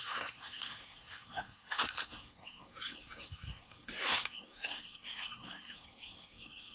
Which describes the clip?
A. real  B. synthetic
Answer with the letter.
B